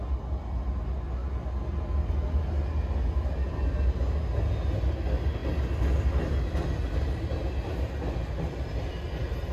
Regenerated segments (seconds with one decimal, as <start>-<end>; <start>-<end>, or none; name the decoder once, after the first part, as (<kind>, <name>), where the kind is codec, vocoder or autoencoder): none